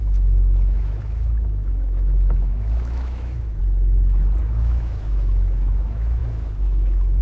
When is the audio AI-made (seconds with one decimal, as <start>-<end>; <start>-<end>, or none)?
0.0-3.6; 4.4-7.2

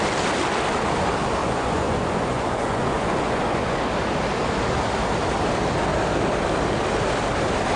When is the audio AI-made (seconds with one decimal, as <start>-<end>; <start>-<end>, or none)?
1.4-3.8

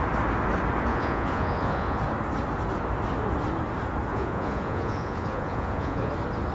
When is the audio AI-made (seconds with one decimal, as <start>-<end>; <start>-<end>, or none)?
0.9-2.0; 4.1-6.1

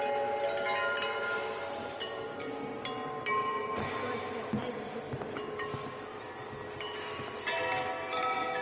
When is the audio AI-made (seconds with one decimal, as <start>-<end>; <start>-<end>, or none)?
none

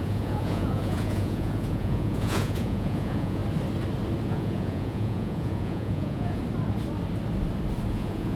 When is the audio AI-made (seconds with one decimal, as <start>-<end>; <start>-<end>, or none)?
0.0-3.4; 4.3-6.4; 7.9-8.4

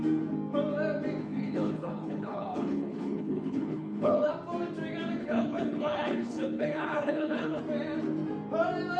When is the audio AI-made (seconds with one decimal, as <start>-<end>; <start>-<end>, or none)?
1.2-4.3; 5.2-7.6

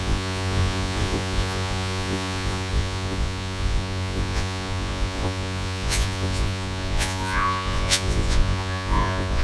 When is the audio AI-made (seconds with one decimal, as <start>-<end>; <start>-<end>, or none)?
0.0-9.4